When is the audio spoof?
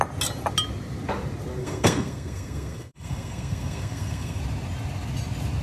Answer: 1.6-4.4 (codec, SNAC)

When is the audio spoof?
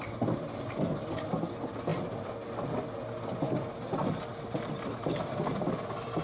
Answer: none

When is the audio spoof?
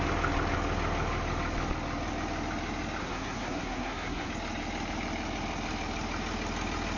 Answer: 3.0-4.3 (codec, SNAC)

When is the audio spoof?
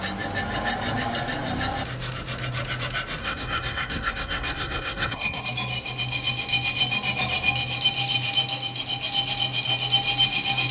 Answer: 3.2-5.4 (codec, SNAC)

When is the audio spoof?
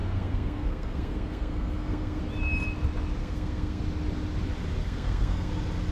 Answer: 0.0-2.2 (codec, SNAC); 3.2-3.8; 4.8-5.5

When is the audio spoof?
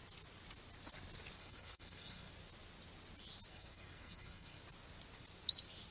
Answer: 1.4-2.3 (codec, SNAC); 3.5-4.6